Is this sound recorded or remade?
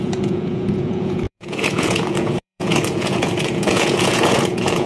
remade